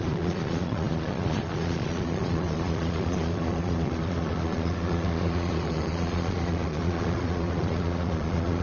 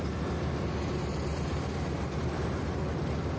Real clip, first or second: second